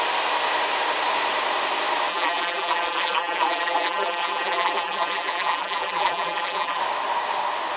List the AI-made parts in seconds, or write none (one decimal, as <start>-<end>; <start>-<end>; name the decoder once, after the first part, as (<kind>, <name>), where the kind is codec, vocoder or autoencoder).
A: 2.1-6.8 (vocoder, BigVGAN v2)